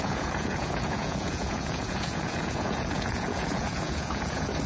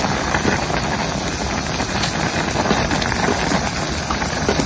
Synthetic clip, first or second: first